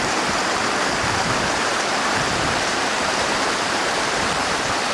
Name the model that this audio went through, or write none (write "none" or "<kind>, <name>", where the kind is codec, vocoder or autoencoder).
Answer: vocoder, BigVGAN v2